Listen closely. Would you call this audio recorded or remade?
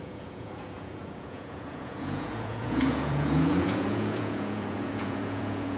remade